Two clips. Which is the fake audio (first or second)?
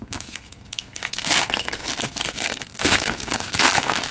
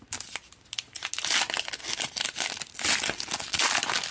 first